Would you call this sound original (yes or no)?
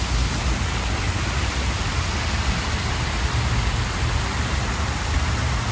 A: yes